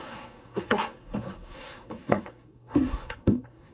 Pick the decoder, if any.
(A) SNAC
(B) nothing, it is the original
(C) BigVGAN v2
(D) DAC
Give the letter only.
A